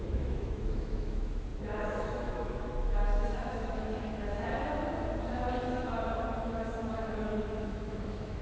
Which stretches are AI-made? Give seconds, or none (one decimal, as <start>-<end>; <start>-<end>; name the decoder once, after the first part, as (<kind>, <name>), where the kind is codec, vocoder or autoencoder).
0.0-4.5 (autoencoder, DAC-VAE); 6.4-8.4